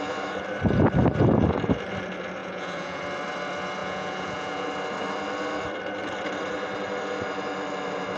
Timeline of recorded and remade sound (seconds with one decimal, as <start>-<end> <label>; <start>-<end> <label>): 0.0-2.4 recorded; 2.4-3.0 remade; 3.0-3.8 recorded; 3.8-4.7 remade; 4.7-8.2 recorded